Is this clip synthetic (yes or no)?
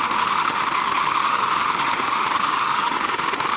yes